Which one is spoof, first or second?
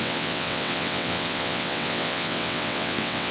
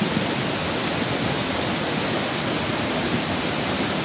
first